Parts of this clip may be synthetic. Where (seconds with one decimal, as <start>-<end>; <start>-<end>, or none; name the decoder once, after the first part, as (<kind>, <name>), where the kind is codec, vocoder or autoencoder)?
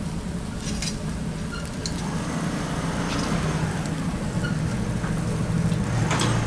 none